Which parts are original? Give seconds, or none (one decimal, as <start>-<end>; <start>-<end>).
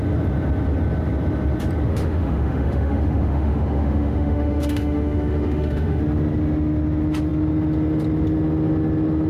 0.0-1.9; 6.0-9.3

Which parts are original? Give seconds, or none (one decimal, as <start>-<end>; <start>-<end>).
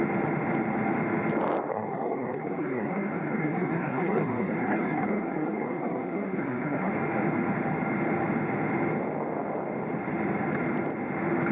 0.0-1.7; 6.9-11.5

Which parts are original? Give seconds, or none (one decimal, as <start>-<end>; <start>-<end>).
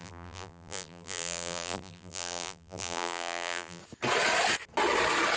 3.8-5.4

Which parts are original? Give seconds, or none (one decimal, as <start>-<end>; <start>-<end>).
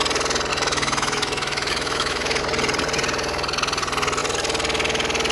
0.0-0.5; 2.4-5.3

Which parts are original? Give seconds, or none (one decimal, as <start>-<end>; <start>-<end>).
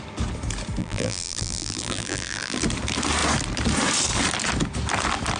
0.0-0.8; 2.6-5.4